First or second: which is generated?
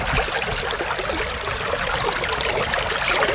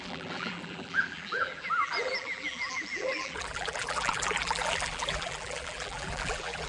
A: second